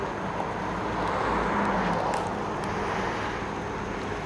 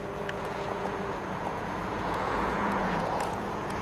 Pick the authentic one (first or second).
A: first